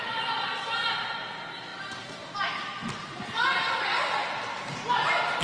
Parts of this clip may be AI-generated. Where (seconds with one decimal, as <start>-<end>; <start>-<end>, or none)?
none